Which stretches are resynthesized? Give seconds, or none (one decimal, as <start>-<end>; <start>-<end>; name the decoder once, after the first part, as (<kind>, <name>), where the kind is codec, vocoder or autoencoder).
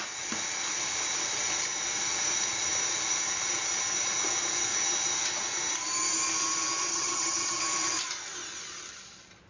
6.9-7.6 (vocoder, HiFi-GAN)